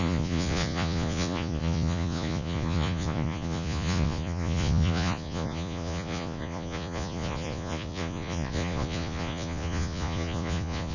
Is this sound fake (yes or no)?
yes